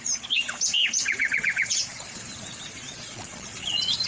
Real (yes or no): no